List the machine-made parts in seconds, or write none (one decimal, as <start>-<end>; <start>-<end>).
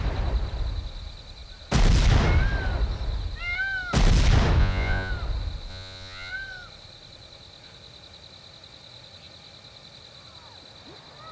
4.6-5.1; 5.7-6.3